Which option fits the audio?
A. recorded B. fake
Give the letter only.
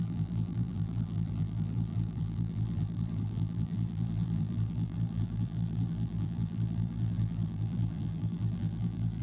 B